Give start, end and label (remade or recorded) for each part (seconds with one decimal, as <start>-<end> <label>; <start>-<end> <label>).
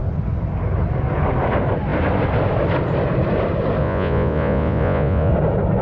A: 0.0-3.8 recorded; 3.8-5.3 remade; 5.3-5.8 recorded